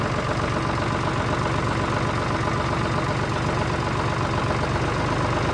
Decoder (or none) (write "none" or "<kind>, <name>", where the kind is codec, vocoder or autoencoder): none